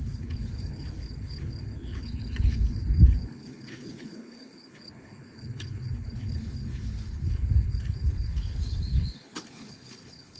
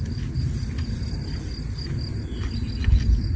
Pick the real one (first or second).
second